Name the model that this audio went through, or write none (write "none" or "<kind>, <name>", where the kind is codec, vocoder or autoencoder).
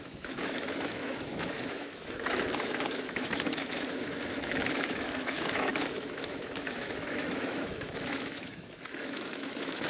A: autoencoder, DAC-VAE